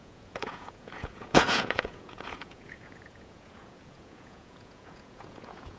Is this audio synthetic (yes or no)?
yes